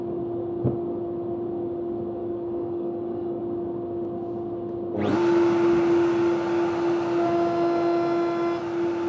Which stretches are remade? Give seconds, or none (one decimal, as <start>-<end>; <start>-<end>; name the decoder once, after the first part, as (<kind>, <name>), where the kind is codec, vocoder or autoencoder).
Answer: 2.2-3.4 (codec, DAC)